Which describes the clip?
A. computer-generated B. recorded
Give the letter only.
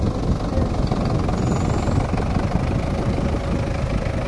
B